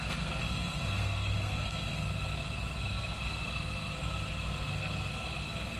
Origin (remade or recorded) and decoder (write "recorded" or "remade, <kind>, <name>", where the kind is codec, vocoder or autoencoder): remade, codec, SNAC